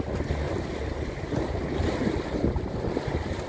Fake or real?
real